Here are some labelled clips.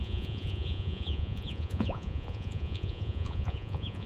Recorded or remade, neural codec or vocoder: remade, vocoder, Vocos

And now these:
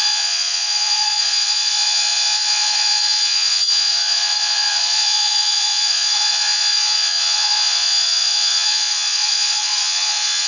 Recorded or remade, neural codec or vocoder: remade, vocoder, Vocos